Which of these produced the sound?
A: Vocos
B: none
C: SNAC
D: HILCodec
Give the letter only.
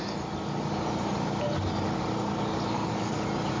B